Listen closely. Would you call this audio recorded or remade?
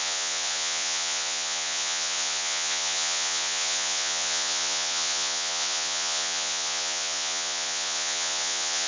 remade